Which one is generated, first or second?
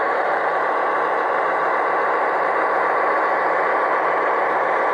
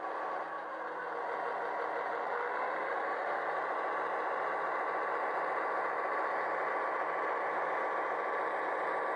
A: first